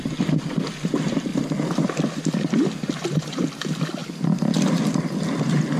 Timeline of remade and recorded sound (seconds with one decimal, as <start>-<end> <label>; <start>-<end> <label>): 0.0-5.8 recorded